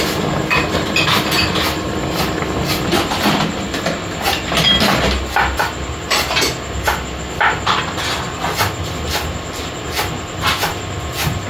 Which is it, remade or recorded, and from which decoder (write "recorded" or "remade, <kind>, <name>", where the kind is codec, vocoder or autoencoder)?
recorded